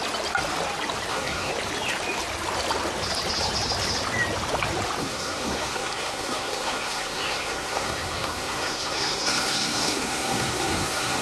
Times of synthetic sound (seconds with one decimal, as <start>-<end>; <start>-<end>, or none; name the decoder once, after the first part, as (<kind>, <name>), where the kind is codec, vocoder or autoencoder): 1.1-1.5 (codec, SNAC); 5.0-11.2